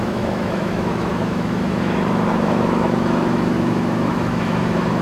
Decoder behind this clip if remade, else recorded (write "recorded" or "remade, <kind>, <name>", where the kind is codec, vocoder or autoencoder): remade, autoencoder, DAC-VAE